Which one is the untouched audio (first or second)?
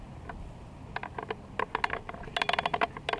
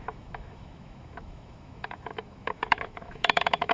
first